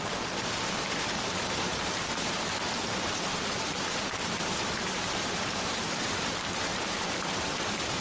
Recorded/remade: remade